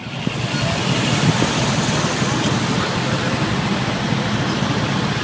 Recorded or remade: recorded